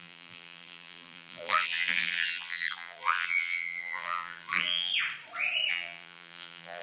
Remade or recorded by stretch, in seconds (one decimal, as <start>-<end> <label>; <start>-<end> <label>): 0.0-4.9 remade; 4.9-5.7 recorded; 5.7-6.8 remade

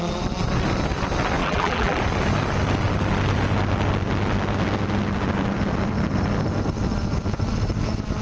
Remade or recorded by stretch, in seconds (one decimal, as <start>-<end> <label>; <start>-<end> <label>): 0.0-1.4 recorded; 1.4-2.0 remade; 2.0-8.2 recorded

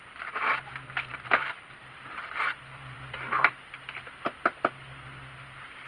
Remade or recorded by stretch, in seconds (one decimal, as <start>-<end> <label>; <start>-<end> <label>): 0.0-1.1 recorded; 1.1-2.4 remade; 2.4-5.9 recorded

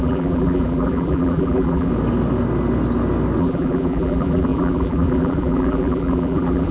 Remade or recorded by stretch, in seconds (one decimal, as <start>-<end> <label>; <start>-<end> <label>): 0.0-1.9 remade; 1.9-3.4 recorded; 3.4-6.7 remade

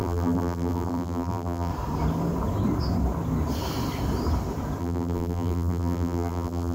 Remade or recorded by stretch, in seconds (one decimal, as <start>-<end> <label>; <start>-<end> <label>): 0.0-1.7 remade; 1.7-4.8 recorded; 4.8-6.7 remade

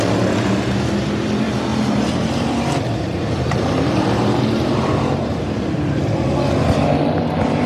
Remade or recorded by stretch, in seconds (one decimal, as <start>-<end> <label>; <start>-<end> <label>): 0.0-1.7 recorded; 1.7-6.3 remade; 6.3-7.7 recorded

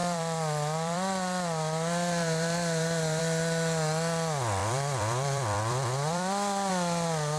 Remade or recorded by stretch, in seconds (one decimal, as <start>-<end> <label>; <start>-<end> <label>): 0.0-3.2 remade; 3.2-4.6 recorded; 4.6-6.7 remade; 6.7-7.4 recorded